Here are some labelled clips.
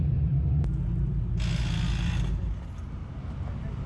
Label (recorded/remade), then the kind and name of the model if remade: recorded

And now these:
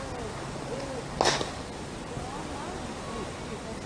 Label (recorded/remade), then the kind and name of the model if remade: recorded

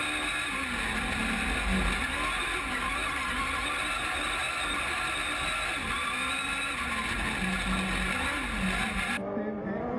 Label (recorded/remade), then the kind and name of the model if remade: recorded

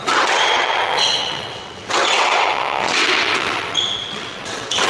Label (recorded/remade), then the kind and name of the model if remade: remade, vocoder, WaveNeXt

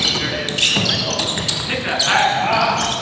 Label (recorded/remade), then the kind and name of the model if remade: recorded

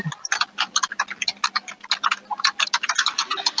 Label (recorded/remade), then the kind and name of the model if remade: recorded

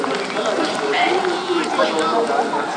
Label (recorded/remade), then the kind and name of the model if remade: recorded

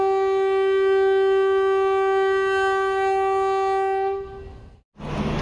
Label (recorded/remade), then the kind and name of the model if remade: recorded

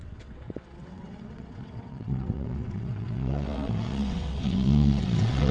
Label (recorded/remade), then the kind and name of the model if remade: remade, vocoder, WaveNeXt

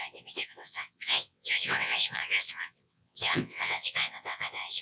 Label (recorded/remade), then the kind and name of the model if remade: remade, vocoder, WaveNeXt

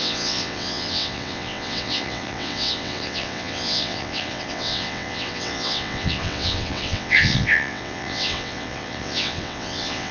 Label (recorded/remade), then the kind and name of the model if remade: remade, vocoder, WaveNeXt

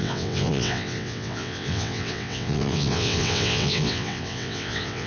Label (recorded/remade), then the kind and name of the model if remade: remade, vocoder, WaveNeXt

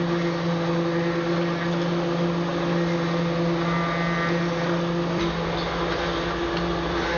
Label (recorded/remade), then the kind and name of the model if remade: recorded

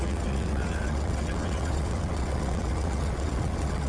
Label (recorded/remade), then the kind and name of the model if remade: remade, vocoder, WaveNeXt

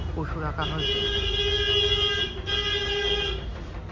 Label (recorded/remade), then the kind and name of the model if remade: recorded